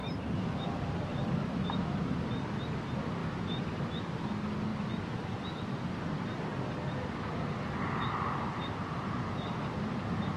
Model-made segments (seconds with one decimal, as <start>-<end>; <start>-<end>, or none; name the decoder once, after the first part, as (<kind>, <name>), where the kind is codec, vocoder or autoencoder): 0.0-1.2 (vocoder, BigVGAN v2); 4.7-7.8; 8.5-9.6